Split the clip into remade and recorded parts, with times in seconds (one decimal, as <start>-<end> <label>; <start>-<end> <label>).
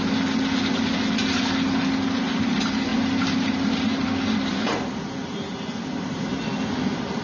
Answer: 0.0-7.2 recorded